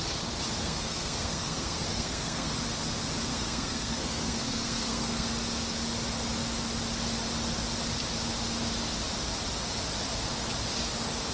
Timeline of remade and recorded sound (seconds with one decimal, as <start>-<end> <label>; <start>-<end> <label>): 0.0-0.6 recorded; 0.6-2.5 remade; 2.5-3.3 recorded; 3.3-5.3 remade; 5.3-11.3 recorded